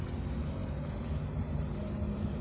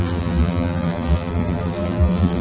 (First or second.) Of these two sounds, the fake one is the second